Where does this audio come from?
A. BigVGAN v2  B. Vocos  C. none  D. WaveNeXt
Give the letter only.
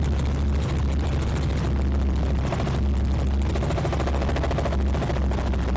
C